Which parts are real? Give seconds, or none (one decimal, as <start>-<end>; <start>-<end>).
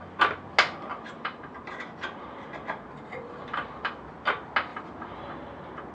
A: 0.0-0.9; 3.9-4.7; 5.3-5.9